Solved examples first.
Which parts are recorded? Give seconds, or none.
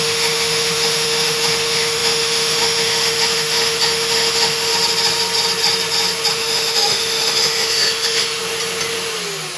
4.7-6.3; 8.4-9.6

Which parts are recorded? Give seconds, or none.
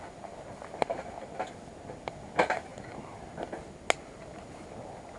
0.0-5.2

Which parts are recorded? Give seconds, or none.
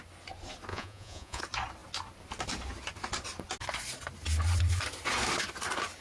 0.0-0.7; 1.4-6.0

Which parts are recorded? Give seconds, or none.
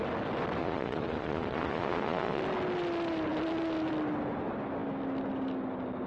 0.0-0.6; 2.4-6.1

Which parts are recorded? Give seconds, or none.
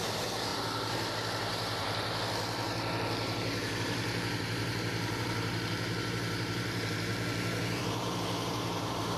7.1-7.8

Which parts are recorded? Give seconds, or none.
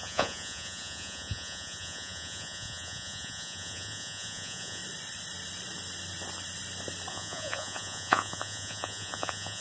4.8-7.1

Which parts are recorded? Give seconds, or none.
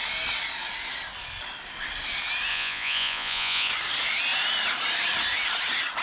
0.0-2.5; 3.7-6.0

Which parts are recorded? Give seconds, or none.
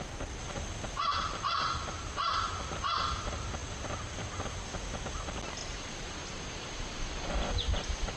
0.0-5.6; 7.1-8.2